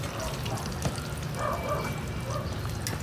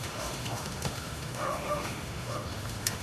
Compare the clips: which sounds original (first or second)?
first